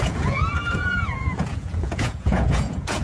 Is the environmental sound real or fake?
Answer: fake